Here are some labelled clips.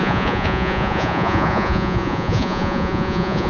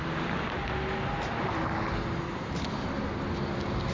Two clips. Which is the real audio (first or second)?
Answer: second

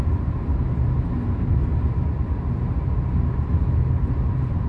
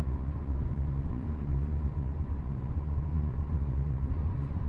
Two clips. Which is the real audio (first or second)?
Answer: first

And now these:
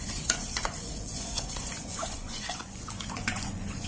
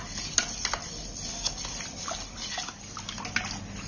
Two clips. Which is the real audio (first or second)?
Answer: second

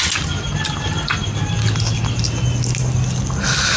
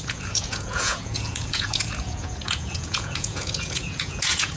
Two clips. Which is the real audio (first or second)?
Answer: first